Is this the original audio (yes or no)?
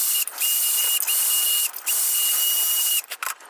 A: yes